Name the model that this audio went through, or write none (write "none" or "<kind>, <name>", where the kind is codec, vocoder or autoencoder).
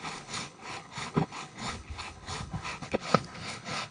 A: codec, HILCodec